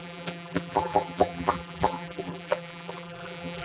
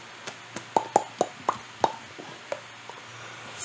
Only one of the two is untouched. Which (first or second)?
second